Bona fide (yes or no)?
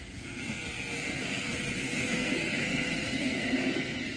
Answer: no